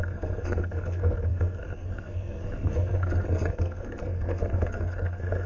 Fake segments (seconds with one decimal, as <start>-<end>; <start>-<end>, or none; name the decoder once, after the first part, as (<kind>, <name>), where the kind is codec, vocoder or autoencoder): 0.0-5.5 (codec, SNAC)